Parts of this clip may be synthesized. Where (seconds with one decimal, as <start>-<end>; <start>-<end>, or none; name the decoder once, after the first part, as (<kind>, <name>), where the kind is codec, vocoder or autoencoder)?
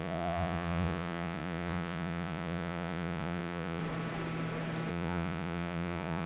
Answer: 0.0-3.8 (vocoder, Vocos); 4.9-6.3